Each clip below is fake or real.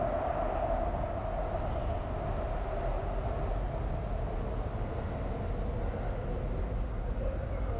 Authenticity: real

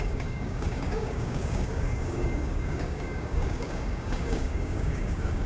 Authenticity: fake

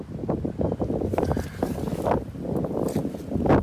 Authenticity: real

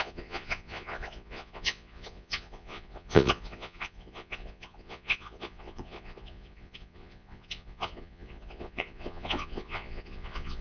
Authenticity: fake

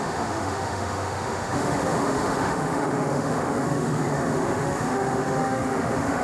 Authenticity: fake